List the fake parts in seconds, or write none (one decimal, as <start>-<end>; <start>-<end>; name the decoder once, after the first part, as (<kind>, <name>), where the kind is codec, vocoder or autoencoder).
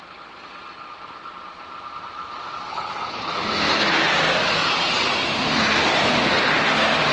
2.7-3.3 (codec, HILCodec)